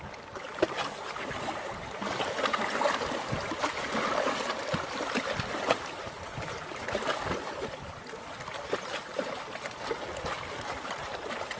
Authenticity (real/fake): real